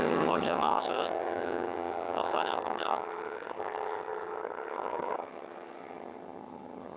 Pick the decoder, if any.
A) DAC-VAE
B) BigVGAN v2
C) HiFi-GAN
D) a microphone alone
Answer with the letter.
C